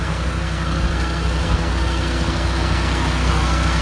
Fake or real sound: fake